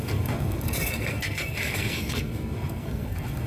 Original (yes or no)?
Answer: no